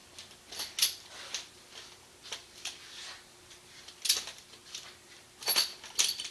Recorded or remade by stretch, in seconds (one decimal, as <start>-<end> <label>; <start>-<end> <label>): 0.0-6.3 recorded